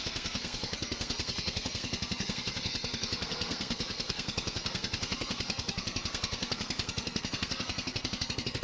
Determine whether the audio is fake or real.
fake